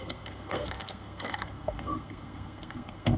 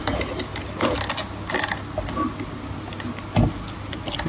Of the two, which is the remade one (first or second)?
first